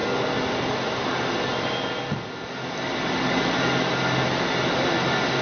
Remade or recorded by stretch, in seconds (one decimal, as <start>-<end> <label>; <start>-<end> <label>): 0.0-5.4 recorded